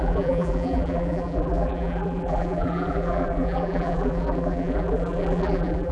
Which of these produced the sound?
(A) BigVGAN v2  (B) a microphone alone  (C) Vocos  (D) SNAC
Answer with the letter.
A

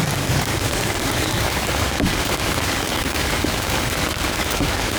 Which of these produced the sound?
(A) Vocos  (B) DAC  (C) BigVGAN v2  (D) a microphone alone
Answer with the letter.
B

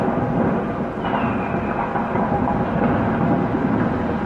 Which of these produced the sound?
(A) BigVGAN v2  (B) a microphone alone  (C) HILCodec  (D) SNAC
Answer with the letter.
B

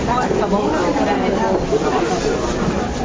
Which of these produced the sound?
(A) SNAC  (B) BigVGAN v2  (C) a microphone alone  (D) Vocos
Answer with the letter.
C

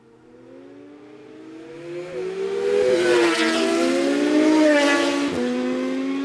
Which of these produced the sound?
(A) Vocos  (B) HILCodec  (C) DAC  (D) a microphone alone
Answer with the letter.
D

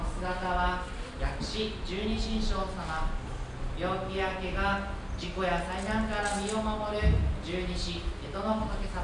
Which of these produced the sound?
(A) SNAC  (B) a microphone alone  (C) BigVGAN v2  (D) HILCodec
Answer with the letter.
B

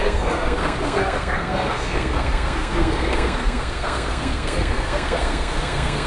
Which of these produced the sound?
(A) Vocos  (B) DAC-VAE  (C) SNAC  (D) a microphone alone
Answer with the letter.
C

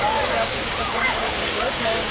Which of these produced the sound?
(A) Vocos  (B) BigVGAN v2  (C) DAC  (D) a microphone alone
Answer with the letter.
C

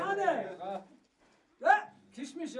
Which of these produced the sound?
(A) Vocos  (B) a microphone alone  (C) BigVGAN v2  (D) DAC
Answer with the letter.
B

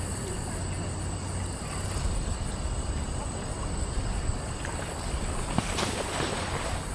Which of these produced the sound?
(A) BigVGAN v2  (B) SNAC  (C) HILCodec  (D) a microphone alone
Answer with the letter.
D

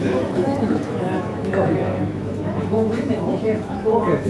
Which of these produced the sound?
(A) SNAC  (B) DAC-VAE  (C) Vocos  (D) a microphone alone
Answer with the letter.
B